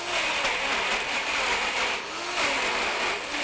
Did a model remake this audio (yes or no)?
no